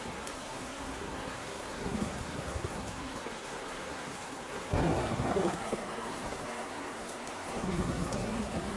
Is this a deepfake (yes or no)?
yes